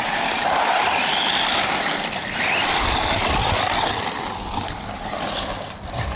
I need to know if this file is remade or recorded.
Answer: remade